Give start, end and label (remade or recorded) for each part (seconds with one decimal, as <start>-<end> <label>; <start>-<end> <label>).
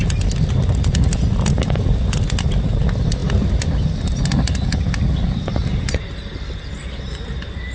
0.0-7.7 recorded